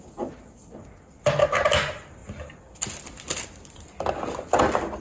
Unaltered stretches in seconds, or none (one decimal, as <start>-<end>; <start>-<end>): 0.0-5.0